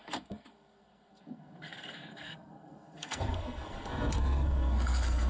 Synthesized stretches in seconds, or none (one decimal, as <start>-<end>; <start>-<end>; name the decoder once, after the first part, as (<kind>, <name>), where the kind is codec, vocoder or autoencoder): 0.0-5.3 (codec, SNAC)